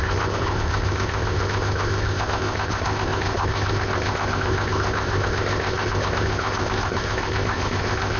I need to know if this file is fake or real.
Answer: fake